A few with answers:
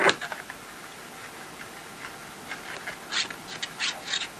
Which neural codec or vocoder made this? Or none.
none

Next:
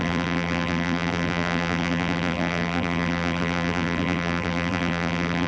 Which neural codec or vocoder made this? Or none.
vocoder, BigVGAN v2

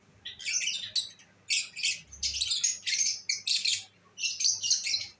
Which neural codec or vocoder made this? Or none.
none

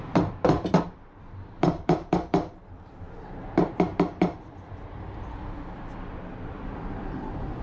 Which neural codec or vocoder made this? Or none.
vocoder, BigVGAN v2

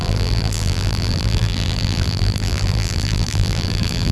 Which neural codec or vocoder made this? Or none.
vocoder, BigVGAN v2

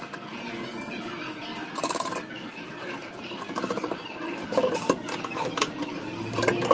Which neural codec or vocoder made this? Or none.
vocoder, BigVGAN v2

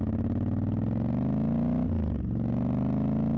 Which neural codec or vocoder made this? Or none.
none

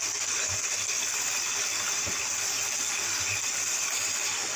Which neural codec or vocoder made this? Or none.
none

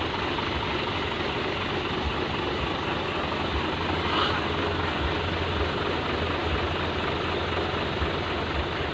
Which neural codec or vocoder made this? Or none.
none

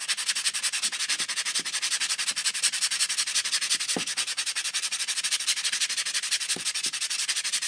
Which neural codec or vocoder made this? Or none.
vocoder, BigVGAN v2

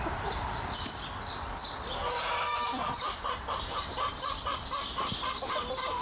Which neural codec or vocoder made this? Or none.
vocoder, BigVGAN v2